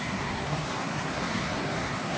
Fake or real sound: fake